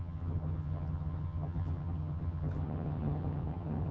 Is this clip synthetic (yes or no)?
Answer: yes